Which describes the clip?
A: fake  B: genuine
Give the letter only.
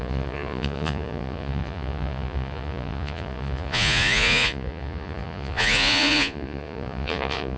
A